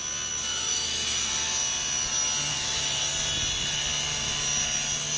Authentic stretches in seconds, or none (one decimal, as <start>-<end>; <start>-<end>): 0.0-0.5; 1.3-2.5; 3.1-5.2